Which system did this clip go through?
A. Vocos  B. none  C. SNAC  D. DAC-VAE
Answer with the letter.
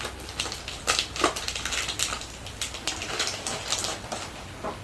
B